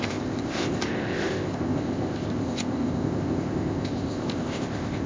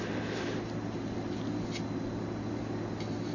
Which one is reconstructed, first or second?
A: first